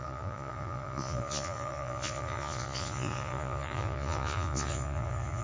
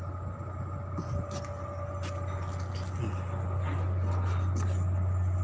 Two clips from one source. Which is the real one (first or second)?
second